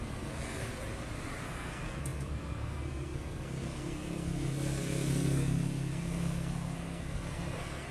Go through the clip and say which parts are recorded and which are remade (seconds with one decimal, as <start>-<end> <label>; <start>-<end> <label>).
0.0-0.7 remade; 0.7-1.4 recorded; 1.4-7.9 remade